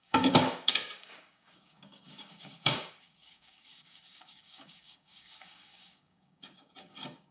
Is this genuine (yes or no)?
no